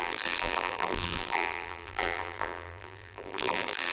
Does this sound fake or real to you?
fake